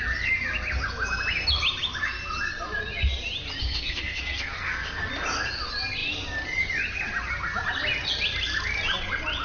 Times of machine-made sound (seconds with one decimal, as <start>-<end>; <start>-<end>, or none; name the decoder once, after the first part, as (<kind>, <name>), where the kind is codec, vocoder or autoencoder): 3.6-5.1 (codec, SNAC)